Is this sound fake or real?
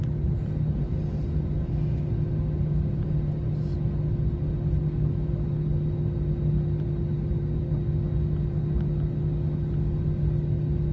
real